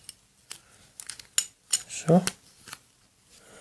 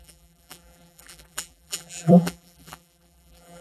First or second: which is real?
first